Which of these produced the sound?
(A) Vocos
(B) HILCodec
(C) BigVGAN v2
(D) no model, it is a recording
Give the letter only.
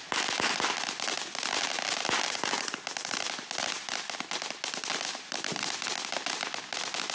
D